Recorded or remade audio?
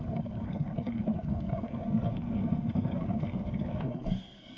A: remade